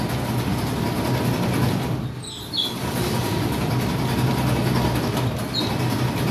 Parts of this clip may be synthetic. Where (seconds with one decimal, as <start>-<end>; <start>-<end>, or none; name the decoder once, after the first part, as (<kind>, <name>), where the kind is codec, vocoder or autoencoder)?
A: none

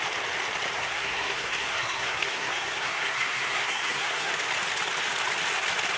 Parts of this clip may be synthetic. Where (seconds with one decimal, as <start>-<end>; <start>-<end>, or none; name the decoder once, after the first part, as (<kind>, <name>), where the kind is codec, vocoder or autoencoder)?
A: 0.8-4.3 (codec, SNAC)

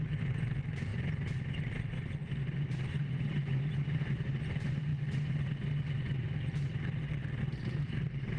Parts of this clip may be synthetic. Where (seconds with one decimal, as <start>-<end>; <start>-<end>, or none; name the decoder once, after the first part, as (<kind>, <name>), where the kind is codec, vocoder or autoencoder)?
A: none

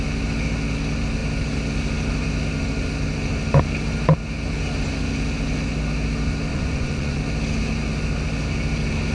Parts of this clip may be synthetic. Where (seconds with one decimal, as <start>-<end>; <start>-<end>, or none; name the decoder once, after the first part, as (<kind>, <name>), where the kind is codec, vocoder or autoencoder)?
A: 6.5-7.2 (vocoder, Vocos)

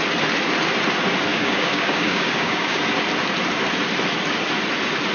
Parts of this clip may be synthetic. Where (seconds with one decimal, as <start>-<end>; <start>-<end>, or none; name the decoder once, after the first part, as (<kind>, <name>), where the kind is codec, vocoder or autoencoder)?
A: 1.3-2.8 (codec, DAC)

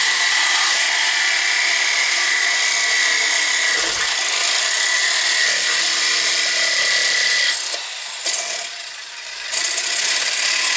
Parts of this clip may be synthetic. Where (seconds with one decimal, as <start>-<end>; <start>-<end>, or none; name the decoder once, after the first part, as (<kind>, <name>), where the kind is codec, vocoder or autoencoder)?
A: 0.0-1.2 (vocoder, Vocos); 2.0-2.5; 8.1-9.1

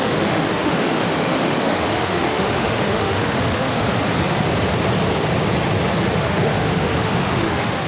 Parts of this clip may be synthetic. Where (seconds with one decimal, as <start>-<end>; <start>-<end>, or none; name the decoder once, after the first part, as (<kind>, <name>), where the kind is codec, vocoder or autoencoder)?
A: 0.0-3.9 (autoencoder, DAC-VAE); 6.2-7.9